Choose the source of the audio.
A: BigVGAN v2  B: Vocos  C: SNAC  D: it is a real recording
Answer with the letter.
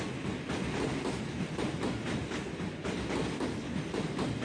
D